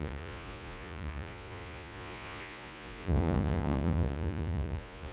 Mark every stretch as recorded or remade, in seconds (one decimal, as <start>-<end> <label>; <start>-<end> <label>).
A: 0.0-5.1 remade